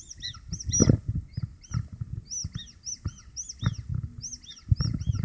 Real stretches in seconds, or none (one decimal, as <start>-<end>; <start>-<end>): 0.0-5.2